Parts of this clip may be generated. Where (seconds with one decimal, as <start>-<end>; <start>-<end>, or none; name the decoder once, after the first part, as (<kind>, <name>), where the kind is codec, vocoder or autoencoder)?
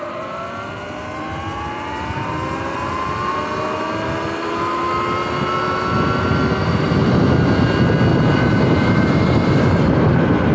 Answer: 8.1-10.5 (vocoder, BigVGAN v2)